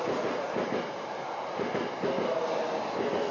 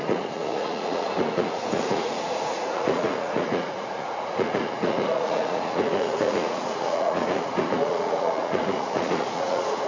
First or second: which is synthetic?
second